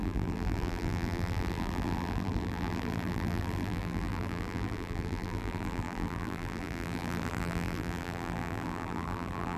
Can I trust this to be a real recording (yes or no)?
no